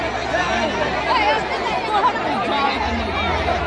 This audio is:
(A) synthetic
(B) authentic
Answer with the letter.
B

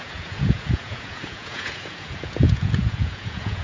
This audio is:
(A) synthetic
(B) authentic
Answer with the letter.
A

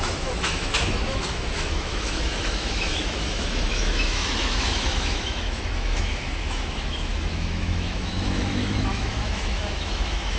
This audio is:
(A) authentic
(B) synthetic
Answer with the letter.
B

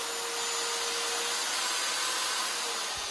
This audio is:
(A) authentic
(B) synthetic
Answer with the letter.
A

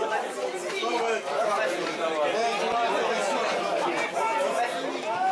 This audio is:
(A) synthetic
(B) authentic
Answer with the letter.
B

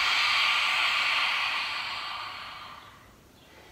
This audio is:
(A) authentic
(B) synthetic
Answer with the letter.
A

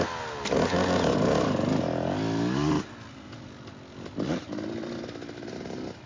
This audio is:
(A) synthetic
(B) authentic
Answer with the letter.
B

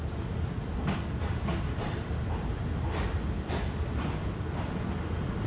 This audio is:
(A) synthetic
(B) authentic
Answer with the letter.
B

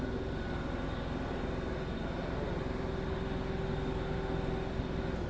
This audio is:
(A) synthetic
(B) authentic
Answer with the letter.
B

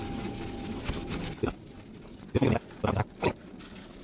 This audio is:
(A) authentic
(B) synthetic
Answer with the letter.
A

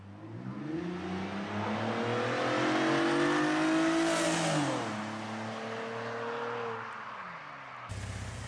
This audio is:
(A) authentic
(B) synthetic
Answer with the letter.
A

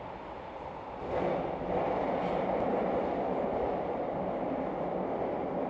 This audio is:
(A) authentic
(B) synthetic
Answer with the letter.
A